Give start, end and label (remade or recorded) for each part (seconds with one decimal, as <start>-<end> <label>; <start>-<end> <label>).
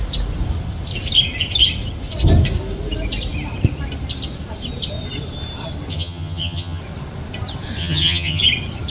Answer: 0.0-5.9 recorded; 5.9-6.8 remade; 6.8-7.8 recorded; 7.8-8.4 remade; 8.4-8.9 recorded